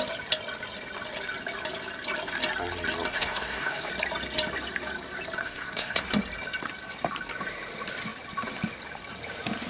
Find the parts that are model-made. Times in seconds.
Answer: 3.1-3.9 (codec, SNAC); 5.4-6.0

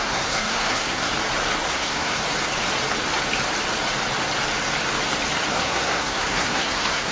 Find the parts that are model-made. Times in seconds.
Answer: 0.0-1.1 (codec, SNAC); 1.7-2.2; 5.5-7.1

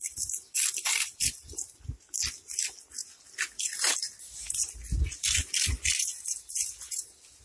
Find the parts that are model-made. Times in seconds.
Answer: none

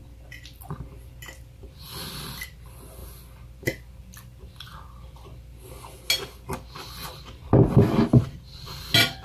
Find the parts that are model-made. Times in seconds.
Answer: none

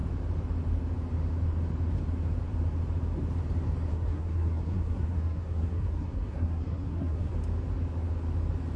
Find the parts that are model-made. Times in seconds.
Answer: 3.9-7.3 (codec, SNAC)

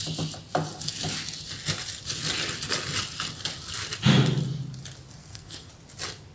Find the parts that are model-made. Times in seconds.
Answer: 5.2-5.7 (codec, SNAC)

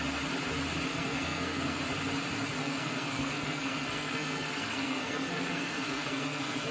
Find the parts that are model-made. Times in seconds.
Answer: 0.9-1.8 (codec, SNAC); 2.6-6.7